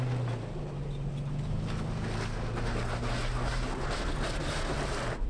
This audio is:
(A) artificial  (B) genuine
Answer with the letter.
B